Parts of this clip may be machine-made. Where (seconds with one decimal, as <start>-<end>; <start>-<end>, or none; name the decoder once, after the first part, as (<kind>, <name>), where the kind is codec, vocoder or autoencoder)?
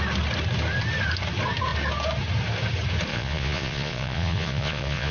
3.1-5.1 (vocoder, Vocos)